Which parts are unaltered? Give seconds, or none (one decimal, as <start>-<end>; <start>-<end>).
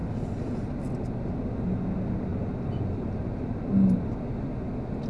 0.0-5.1